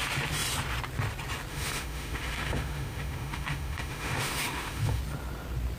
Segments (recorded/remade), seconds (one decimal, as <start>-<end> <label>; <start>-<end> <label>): 0.0-1.5 recorded; 1.5-5.0 remade; 5.0-5.8 recorded